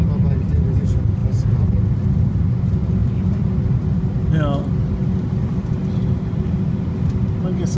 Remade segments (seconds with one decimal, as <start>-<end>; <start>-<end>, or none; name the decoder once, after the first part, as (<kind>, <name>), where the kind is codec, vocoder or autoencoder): none